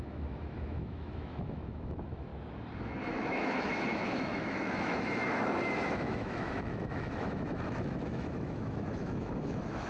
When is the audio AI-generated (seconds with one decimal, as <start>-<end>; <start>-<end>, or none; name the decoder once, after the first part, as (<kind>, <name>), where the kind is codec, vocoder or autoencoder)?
0.0-2.3 (autoencoder, DAC-VAE); 3.0-9.9